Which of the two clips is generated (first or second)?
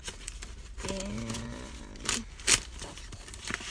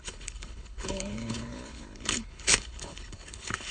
second